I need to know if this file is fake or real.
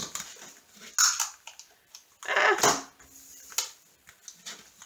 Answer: real